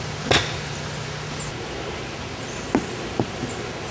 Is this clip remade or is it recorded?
recorded